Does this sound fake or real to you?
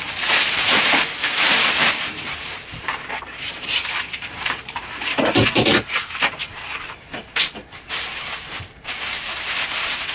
fake